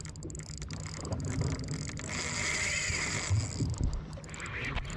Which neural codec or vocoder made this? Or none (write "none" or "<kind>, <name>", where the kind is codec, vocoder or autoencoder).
none